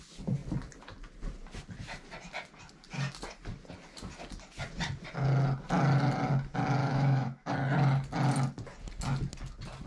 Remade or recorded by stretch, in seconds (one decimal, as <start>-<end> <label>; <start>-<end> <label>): 0.0-6.8 recorded; 6.8-7.5 remade; 7.5-9.9 recorded